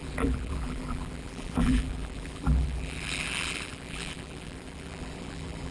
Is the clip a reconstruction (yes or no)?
yes